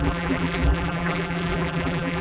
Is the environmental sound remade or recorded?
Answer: remade